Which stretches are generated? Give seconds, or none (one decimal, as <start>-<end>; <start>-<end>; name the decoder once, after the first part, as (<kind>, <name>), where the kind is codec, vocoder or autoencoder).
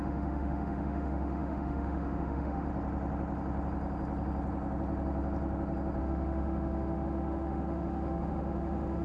0.0-2.7 (autoencoder, DAC-VAE); 6.0-9.0